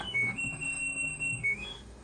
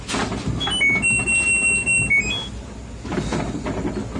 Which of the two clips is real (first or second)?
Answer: second